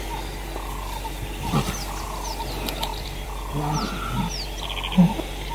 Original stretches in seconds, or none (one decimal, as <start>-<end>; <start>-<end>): 0.0-2.9; 3.5-5.5